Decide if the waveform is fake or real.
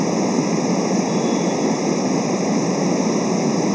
real